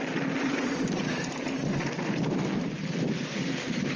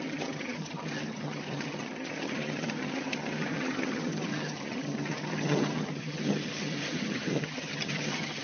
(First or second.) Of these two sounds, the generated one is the second